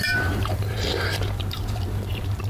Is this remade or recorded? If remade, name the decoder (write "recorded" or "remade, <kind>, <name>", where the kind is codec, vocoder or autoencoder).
remade, vocoder, BigVGAN v2